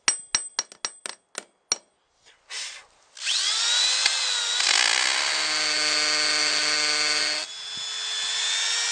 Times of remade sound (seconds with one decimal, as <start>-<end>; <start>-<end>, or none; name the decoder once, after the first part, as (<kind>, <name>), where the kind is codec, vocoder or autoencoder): none